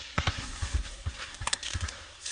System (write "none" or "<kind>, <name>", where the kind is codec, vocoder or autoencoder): codec, SNAC